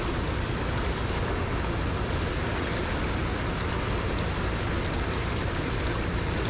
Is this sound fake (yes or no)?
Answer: no